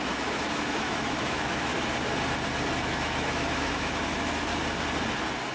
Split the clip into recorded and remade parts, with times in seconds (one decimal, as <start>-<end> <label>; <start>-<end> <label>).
0.0-1.7 remade; 1.7-2.7 recorded; 2.7-4.5 remade; 4.5-5.5 recorded